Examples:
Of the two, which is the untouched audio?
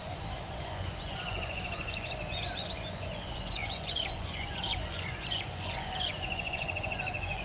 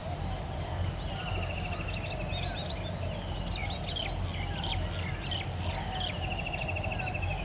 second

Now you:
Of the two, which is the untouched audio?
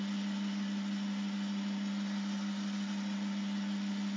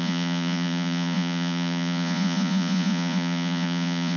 first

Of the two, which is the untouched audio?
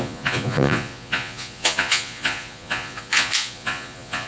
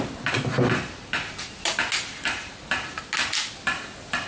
second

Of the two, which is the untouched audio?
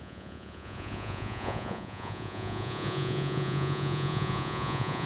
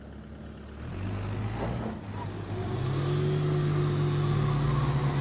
second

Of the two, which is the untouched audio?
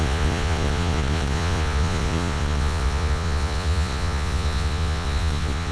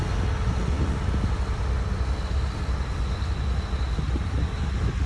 second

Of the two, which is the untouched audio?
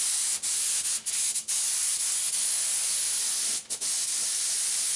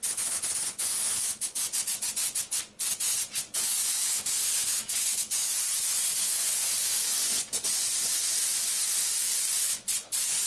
first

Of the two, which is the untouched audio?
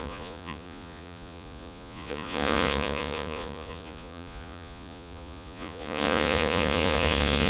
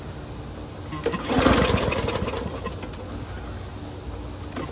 second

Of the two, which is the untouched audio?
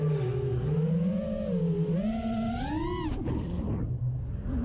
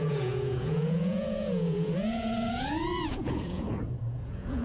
first